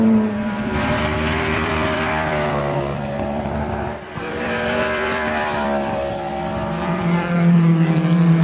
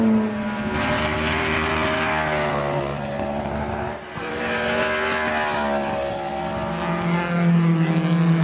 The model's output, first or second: first